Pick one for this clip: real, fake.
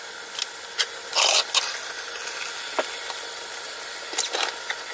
real